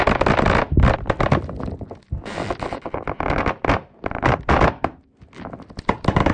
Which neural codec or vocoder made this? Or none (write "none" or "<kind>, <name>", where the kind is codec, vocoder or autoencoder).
none